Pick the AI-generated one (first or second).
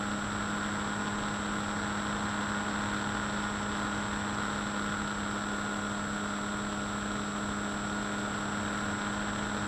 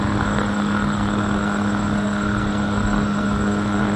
second